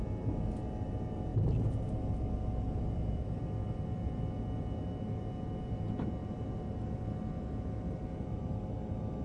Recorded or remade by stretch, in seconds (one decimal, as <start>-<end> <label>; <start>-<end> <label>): 0.0-6.2 recorded; 6.2-6.8 remade; 6.8-9.2 recorded